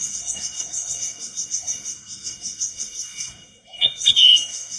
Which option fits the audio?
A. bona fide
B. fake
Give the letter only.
B